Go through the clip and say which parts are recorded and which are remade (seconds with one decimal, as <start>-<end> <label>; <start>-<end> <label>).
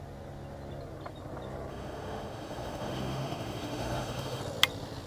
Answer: 0.0-1.7 recorded; 1.7-4.4 remade; 4.4-5.1 recorded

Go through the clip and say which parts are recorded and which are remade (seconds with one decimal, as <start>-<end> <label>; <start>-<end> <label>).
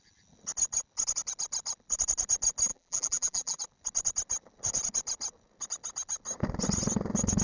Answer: 0.0-2.7 recorded; 2.7-3.6 remade; 3.6-7.4 recorded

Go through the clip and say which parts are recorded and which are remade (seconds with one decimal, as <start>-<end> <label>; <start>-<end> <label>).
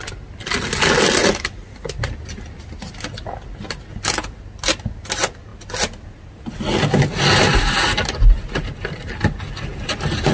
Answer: 0.0-10.3 recorded